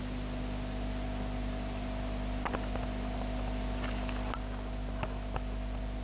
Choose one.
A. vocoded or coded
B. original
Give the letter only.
B